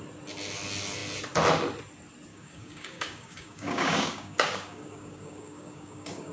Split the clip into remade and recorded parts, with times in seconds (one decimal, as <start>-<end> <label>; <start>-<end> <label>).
0.0-2.3 recorded; 2.3-6.3 remade

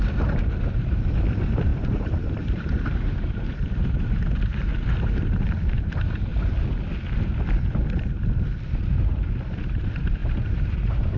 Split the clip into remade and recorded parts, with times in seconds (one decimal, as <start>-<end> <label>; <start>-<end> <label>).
0.0-6.3 remade; 6.3-8.8 recorded; 8.8-11.2 remade